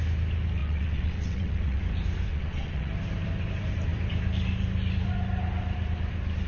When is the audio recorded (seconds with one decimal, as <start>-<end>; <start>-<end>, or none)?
0.0-0.6; 1.8-2.3; 2.9-6.5

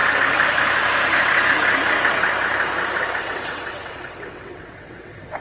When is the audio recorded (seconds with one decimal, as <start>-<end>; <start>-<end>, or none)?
0.0-3.2

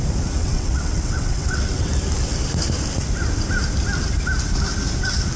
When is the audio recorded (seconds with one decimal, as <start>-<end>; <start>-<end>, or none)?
0.0-0.4; 1.9-5.4

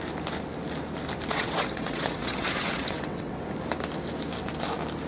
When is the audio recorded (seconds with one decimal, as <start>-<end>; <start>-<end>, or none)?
0.0-1.3; 3.4-5.1

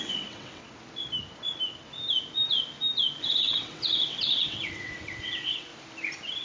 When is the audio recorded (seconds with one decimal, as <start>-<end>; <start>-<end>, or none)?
0.6-3.2; 5.7-6.4

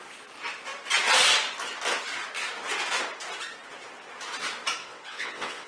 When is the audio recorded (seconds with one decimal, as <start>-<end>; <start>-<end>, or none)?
0.0-4.8